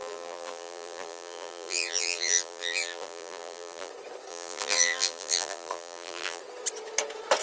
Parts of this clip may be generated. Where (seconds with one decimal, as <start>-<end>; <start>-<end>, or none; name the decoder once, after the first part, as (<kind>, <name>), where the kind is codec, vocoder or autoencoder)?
0.0-3.9 (vocoder, BigVGAN v2); 4.3-6.4